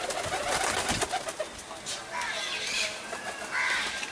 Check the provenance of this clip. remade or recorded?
recorded